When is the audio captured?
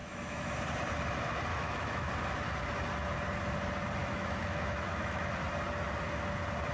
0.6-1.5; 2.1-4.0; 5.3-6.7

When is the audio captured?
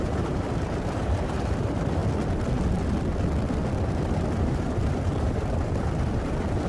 2.0-3.9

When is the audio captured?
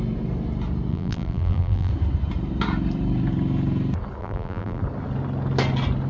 0.0-0.9; 1.9-4.2; 4.8-6.1